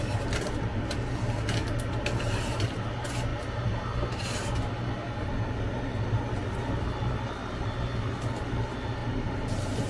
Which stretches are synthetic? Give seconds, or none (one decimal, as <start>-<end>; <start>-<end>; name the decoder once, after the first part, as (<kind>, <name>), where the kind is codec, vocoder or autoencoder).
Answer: 9.0-9.9 (vocoder, BigVGAN v2)